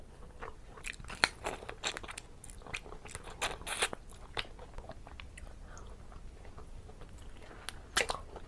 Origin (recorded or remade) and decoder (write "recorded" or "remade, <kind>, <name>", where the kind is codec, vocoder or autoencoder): recorded